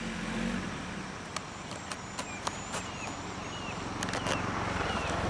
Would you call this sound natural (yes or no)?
yes